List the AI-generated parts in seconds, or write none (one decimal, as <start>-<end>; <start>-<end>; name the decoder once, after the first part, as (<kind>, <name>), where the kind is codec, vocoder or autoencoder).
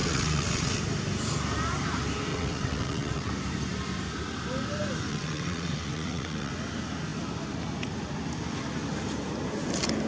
0.0-0.8 (vocoder, WaveNeXt); 2.3-3.3; 5.1-6.5